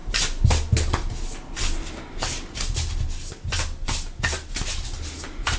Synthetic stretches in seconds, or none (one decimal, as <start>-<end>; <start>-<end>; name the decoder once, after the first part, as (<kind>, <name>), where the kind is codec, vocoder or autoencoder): none